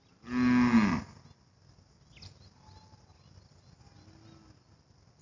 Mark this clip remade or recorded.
recorded